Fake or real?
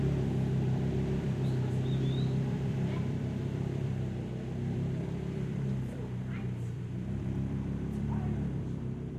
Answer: fake